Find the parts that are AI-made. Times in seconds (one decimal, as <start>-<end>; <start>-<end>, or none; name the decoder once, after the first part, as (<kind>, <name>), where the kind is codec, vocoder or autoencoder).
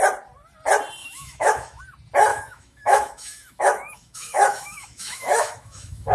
1.0-1.8 (autoencoder, DAC-VAE); 2.3-6.1